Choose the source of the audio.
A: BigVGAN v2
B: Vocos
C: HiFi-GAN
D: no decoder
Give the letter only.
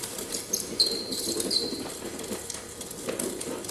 A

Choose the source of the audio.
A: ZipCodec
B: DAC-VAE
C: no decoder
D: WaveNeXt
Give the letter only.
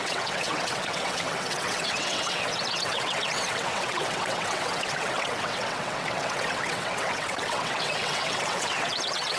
D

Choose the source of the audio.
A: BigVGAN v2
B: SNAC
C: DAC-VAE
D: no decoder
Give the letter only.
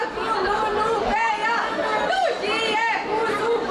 A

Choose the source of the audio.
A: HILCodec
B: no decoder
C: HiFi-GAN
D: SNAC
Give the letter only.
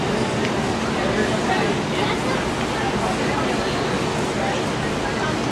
B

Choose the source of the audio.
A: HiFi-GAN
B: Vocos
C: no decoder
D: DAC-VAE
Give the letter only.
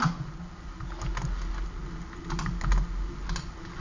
C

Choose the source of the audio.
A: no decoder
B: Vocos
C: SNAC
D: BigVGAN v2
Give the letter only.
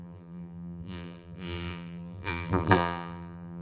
D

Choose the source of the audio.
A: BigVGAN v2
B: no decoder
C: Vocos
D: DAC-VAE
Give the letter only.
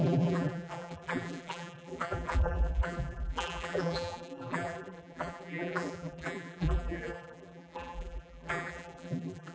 A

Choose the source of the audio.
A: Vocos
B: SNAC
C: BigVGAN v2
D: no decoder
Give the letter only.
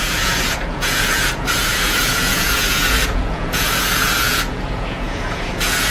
A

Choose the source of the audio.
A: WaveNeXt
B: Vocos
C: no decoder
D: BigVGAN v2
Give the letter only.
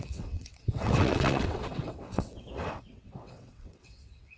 A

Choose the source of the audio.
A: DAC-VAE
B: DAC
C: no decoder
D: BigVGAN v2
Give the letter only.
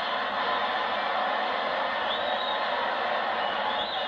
C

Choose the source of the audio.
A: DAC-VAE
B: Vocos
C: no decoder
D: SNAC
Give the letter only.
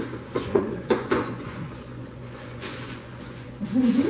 B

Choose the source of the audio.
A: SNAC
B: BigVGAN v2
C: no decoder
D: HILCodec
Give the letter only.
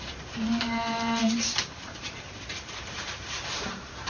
B